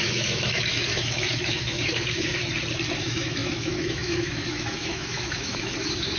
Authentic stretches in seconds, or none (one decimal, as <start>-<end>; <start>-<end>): 2.4-3.0